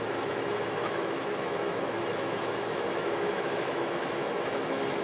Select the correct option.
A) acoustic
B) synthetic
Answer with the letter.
B